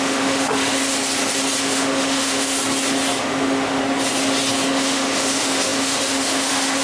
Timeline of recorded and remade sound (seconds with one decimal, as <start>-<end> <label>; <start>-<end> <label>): 0.0-1.0 remade; 1.0-1.6 recorded; 1.6-2.6 remade; 2.6-3.2 recorded; 3.2-3.8 remade; 3.8-4.7 recorded; 4.7-6.8 remade

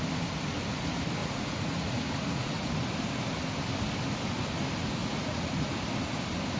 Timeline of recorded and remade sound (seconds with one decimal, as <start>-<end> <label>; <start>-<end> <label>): 0.0-1.2 recorded; 1.2-2.7 remade; 2.7-5.0 recorded; 5.0-5.7 remade; 5.7-6.6 recorded

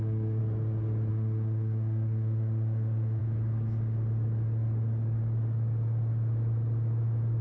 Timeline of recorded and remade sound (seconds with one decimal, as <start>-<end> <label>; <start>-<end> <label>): 0.0-0.4 remade; 0.4-1.1 recorded; 1.1-3.2 remade; 3.2-7.4 recorded

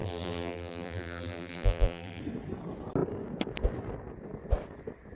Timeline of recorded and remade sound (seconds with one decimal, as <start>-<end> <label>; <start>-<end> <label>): 0.0-2.2 remade; 2.2-5.2 recorded

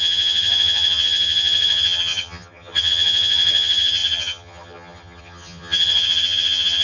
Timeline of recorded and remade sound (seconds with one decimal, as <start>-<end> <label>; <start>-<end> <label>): 0.0-6.8 remade

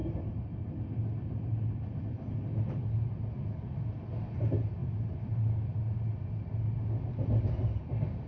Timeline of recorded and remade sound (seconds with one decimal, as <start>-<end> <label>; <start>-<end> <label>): 0.0-8.3 recorded

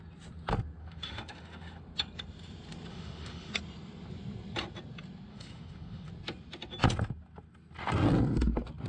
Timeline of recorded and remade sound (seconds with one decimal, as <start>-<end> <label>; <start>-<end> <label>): 0.0-0.8 recorded; 0.8-1.8 remade; 1.8-2.9 recorded; 2.9-3.5 remade; 3.5-5.3 recorded; 5.3-6.1 remade; 6.1-8.9 recorded

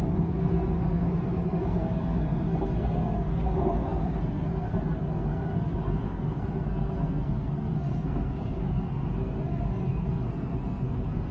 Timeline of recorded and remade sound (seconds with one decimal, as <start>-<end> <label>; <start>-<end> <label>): 0.0-11.3 remade